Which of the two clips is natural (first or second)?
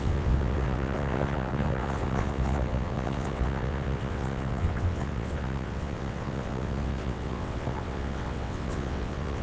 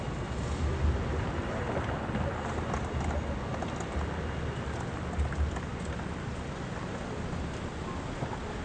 second